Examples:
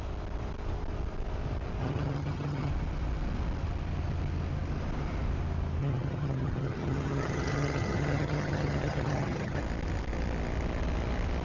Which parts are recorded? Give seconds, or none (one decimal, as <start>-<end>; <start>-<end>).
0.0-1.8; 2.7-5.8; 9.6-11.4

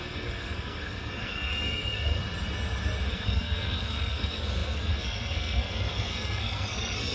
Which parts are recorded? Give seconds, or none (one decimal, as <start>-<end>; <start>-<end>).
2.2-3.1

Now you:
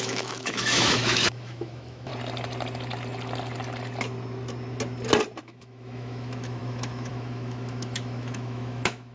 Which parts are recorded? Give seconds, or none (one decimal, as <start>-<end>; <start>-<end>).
2.1-5.4

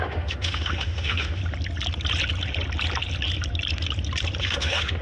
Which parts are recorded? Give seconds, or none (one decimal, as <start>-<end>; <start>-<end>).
1.4-4.4

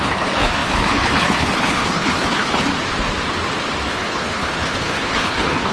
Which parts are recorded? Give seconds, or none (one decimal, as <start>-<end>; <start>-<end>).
2.7-3.9

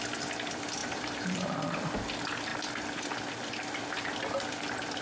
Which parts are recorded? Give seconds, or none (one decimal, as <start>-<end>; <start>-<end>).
0.0-0.8; 1.6-5.0

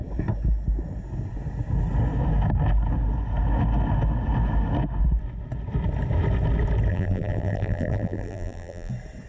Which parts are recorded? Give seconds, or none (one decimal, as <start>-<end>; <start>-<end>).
0.0-6.9; 8.9-9.3

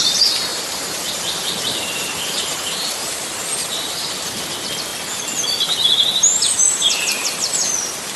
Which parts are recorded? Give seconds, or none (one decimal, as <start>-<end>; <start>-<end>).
0.0-0.5; 4.3-8.2